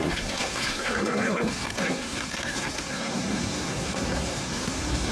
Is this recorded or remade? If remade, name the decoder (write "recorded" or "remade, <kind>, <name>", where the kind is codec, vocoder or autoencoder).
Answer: remade, codec, SNAC